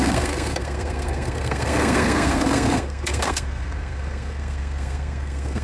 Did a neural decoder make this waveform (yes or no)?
yes